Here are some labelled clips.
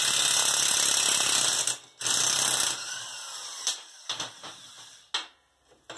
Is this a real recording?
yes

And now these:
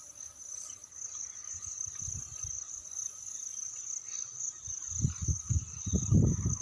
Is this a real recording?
yes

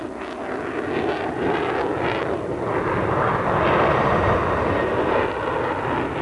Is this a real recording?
yes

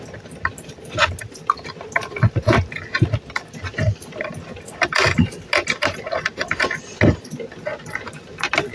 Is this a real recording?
yes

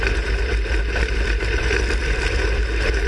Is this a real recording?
yes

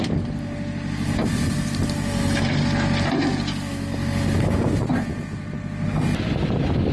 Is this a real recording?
yes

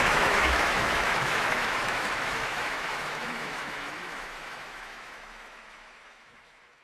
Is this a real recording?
no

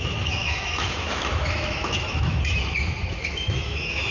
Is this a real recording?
no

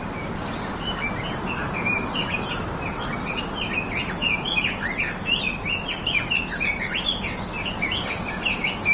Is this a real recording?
yes